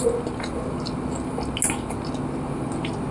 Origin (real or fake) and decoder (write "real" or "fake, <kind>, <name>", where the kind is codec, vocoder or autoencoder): real